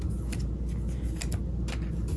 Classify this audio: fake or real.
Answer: real